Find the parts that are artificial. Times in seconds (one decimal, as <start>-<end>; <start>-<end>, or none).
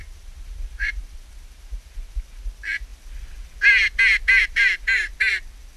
0.0-2.5; 4.3-5.0